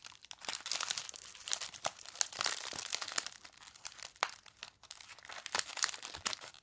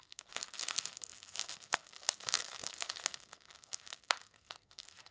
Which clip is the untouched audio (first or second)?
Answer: first